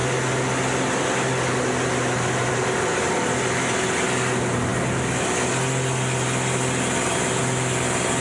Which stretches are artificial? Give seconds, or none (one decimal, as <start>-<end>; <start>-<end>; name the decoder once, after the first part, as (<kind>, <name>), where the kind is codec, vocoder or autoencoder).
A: none